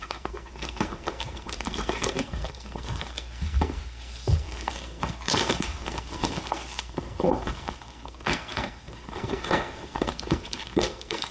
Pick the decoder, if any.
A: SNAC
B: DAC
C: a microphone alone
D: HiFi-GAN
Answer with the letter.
A